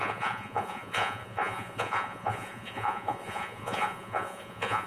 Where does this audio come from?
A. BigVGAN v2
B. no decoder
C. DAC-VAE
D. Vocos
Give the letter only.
D